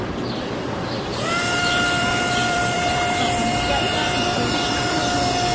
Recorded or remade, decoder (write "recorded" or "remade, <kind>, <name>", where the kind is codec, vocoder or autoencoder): remade, vocoder, BigVGAN v2